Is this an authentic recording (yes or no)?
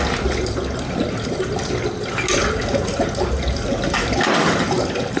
yes